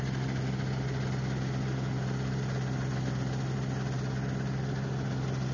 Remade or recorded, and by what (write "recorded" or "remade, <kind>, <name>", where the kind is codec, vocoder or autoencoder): recorded